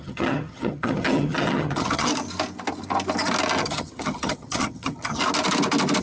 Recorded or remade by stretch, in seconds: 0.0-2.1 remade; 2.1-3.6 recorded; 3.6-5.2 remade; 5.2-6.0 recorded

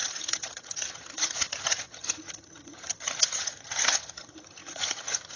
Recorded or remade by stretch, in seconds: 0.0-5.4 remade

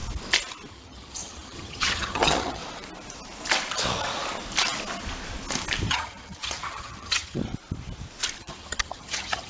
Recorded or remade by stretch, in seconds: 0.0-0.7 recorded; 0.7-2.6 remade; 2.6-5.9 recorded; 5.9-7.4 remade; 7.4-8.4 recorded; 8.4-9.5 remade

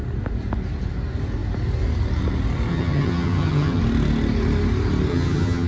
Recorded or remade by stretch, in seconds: 0.0-2.7 recorded; 2.7-3.8 remade; 3.8-5.1 recorded; 5.1-5.7 remade